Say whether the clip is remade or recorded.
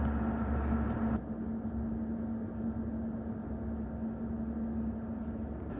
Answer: recorded